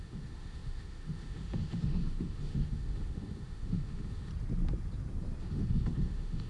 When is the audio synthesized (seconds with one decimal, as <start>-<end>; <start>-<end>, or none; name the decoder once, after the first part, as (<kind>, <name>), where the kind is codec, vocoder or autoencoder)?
0.0-4.3 (autoencoder, DAC-VAE); 5.4-6.5